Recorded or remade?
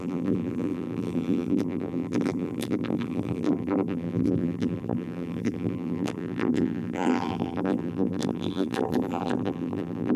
remade